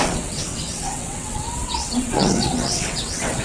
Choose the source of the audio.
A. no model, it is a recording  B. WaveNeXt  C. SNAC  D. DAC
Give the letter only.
B